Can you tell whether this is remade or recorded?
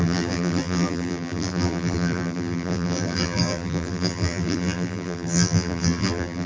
remade